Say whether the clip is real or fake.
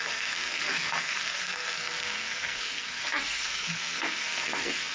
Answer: fake